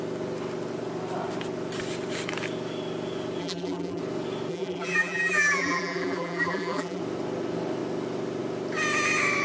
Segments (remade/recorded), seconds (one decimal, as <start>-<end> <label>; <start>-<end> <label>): 0.0-3.4 recorded; 3.4-4.0 remade; 4.0-4.5 recorded; 4.5-7.0 remade; 7.0-9.4 recorded